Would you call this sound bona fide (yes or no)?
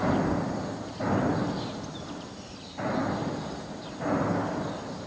yes